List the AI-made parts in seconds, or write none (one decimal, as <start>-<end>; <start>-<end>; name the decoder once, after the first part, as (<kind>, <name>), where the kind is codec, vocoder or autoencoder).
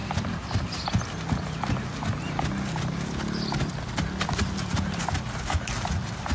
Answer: none